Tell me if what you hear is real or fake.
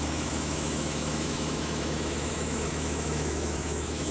fake